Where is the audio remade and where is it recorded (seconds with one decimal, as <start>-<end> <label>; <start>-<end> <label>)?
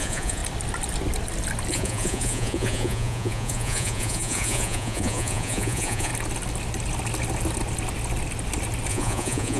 0.0-0.4 remade; 0.4-1.7 recorded; 1.7-6.1 remade; 6.1-8.9 recorded; 8.9-9.6 remade